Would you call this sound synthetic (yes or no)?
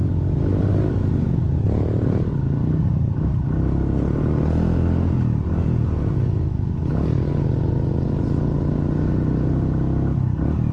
no